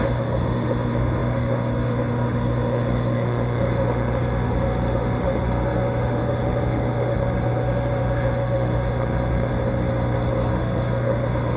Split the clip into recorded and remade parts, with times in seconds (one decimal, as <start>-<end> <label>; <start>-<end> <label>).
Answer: 0.0-9.5 remade; 9.5-10.5 recorded; 10.5-11.6 remade